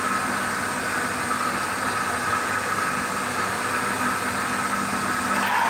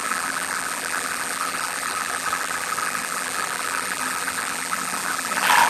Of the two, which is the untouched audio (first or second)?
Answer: first